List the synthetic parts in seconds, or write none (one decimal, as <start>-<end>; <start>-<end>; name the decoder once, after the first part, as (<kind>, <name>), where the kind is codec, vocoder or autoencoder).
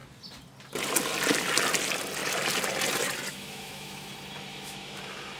3.3-4.1 (autoencoder, DAC-VAE); 4.5-5.0